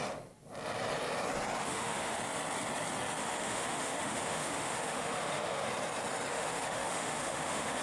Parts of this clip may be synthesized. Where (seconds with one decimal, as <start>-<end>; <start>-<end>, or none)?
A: 1.6-2.2; 3.2-5.7; 6.3-7.8